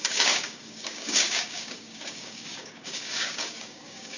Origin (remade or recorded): remade